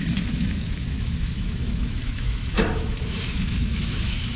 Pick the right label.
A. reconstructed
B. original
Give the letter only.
A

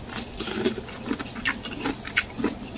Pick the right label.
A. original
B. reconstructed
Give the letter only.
A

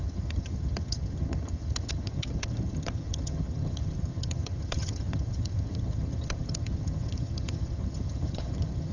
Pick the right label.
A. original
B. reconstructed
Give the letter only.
B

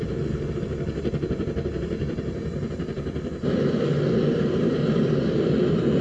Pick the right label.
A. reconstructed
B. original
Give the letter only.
B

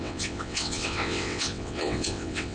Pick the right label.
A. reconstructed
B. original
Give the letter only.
A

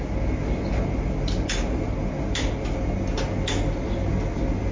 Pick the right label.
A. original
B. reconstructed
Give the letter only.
A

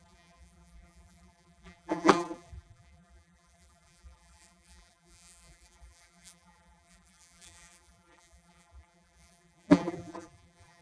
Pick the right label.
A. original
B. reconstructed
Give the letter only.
B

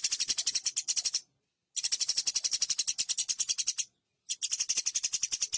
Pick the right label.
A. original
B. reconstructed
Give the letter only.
A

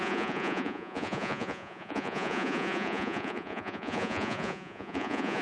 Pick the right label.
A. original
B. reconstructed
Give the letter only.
B